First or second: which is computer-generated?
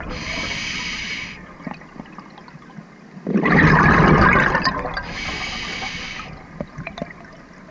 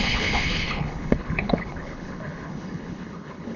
second